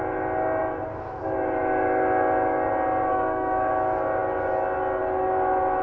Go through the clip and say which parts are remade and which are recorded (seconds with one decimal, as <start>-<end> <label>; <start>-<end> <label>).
0.0-3.1 recorded; 3.1-3.7 remade; 3.7-5.8 recorded